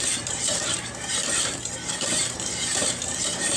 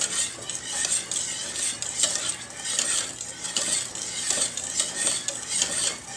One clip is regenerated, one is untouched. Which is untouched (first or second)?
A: second